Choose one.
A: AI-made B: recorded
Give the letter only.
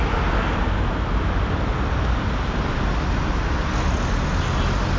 B